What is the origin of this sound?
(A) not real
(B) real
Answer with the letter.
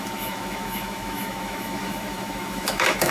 A